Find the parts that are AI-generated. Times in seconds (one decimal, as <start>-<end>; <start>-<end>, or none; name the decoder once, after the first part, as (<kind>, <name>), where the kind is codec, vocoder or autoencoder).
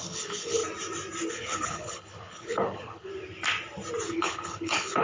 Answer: 0.0-0.6 (codec, HILCodec); 1.3-3.1; 4.1-5.0